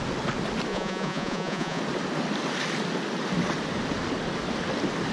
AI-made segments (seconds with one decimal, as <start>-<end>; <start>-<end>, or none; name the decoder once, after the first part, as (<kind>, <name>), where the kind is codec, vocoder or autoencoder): 0.7-1.8 (vocoder, Vocos)